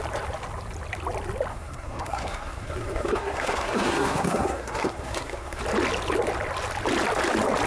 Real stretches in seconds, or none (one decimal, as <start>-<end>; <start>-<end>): 0.0-1.5; 5.6-7.7